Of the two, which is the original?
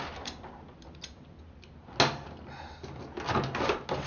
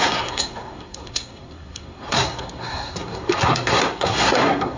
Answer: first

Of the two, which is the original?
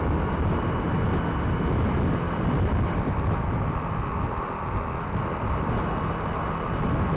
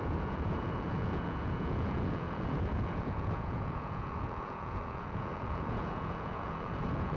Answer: first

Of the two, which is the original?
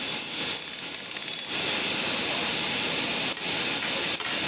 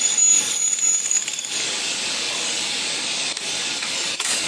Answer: first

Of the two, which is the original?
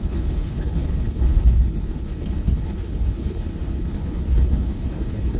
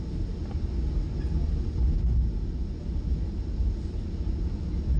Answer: second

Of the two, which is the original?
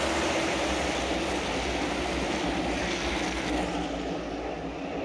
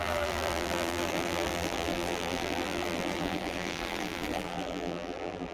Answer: first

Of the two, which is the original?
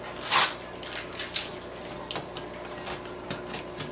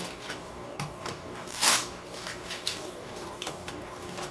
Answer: first